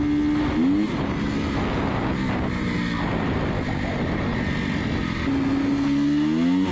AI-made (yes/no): no